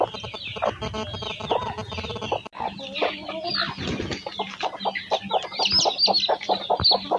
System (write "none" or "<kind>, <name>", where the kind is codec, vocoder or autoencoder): none